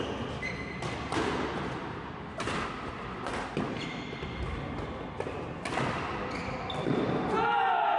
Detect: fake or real real